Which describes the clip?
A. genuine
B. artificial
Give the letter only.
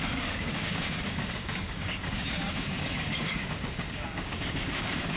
B